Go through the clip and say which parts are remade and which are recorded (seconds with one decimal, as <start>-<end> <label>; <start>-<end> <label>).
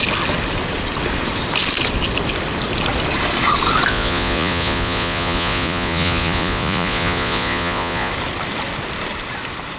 0.0-3.9 recorded; 3.9-8.1 remade; 8.1-9.8 recorded